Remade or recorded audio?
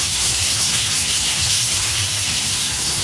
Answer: remade